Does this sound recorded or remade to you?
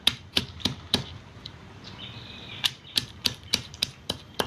remade